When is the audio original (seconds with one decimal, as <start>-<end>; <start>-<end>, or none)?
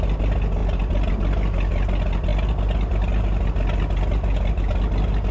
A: 0.0-5.3